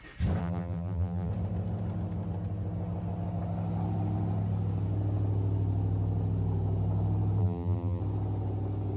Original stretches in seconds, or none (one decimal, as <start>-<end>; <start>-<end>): 0.0-0.4; 1.3-7.4; 8.0-9.0